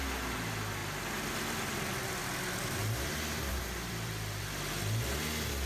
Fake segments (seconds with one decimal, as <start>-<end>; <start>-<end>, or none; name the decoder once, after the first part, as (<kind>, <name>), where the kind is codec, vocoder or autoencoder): 0.8-1.4 (vocoder, BigVGAN v2); 2.2-4.4

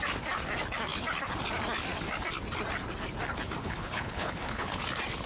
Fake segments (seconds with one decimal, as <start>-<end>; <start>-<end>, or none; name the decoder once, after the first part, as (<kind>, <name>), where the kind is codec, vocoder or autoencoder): 3.6-4.8 (codec, HILCodec)

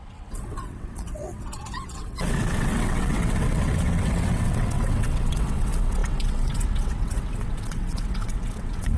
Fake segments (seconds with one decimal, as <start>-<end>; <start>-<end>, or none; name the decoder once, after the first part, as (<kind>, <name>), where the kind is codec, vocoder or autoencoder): 0.0-9.0 (vocoder, WaveNeXt)

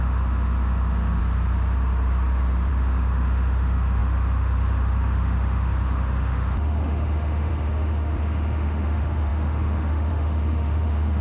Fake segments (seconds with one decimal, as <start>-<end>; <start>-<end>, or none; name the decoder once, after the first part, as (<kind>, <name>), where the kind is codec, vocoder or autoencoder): 0.0-1.2 (autoencoder, DAC-VAE); 2.7-11.2